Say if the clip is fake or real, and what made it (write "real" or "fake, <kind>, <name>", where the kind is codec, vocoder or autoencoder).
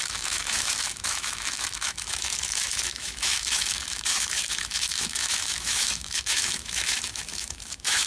fake, autoencoder, DAC-VAE